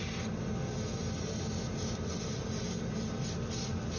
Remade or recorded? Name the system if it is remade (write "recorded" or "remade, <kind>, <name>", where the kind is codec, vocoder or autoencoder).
recorded